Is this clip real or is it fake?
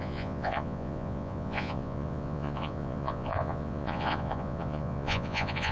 fake